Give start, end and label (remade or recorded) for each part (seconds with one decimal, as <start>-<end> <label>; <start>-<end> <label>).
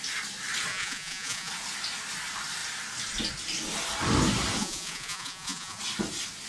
0.0-0.7 recorded; 0.7-1.5 remade; 1.5-4.6 recorded; 4.6-5.8 remade; 5.8-6.5 recorded